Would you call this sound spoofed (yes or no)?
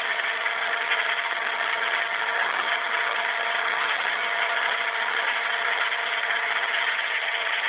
yes